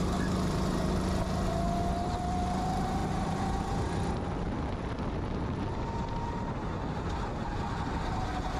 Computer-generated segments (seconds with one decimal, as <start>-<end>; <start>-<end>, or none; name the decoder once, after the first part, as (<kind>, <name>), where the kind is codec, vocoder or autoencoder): none